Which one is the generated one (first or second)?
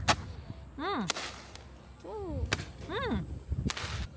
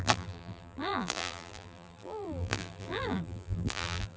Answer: second